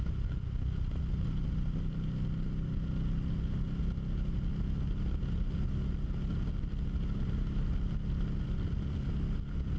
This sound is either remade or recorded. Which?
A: recorded